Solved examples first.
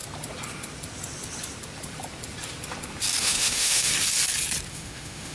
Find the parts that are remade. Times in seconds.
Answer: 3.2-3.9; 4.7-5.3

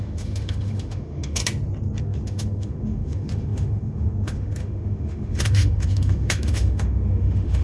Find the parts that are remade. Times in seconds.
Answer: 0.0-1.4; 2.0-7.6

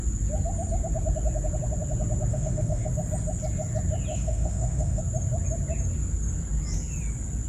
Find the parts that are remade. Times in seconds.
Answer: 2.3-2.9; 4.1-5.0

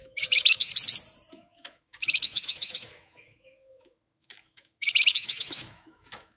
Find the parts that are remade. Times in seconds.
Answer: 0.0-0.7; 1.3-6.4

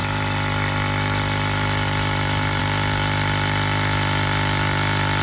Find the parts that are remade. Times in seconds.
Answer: none